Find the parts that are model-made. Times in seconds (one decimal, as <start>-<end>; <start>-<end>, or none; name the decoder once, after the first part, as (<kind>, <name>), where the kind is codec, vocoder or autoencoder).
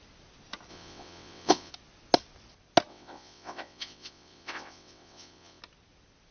0.7-1.7 (vocoder, WaveNeXt); 2.9-5.6